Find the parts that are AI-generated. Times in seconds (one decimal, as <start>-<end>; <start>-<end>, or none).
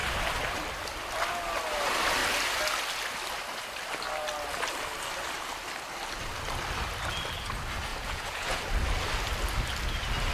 7.9-8.6